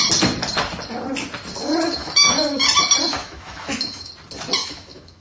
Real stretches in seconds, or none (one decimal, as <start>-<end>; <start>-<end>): 0.0-2.0; 2.6-3.2; 4.1-4.6